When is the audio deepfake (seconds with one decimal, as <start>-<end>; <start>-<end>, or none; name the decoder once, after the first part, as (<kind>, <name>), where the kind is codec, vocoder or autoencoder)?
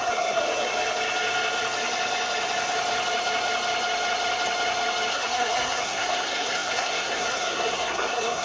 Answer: 0.0-0.4 (codec, SNAC); 5.1-8.4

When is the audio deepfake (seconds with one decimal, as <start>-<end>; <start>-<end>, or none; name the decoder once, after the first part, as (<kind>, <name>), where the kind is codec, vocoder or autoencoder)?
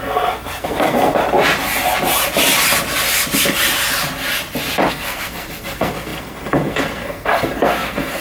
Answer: 0.0-1.2 (codec, SNAC); 4.9-8.2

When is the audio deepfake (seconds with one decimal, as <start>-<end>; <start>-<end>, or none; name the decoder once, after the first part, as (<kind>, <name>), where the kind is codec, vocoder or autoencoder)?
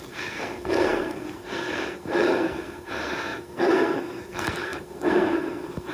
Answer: 0.0-5.9 (codec, SNAC)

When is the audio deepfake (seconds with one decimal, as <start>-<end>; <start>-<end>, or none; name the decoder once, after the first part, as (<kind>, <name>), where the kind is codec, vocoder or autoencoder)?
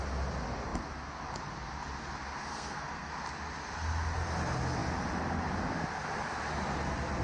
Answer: 2.5-3.1 (codec, SNAC)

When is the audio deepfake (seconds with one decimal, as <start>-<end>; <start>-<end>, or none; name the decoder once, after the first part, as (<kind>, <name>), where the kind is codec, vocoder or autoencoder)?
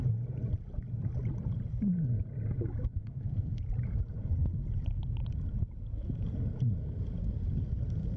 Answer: 3.0-3.6 (codec, SNAC)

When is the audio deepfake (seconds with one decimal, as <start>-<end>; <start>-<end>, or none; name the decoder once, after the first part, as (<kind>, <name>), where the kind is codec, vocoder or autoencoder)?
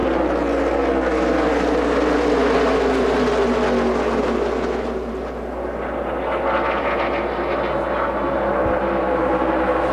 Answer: none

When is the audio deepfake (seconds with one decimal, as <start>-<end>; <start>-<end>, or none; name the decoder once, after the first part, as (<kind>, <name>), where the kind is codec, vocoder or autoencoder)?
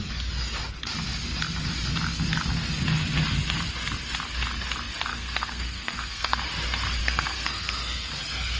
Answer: 5.1-6.4 (codec, SNAC); 7.0-8.1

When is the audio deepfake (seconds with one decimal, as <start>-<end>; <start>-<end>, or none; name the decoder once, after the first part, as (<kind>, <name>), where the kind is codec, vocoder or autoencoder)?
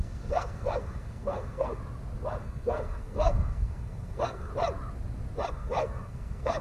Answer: 0.0-1.8 (codec, SNAC); 2.4-4.5; 5.5-6.6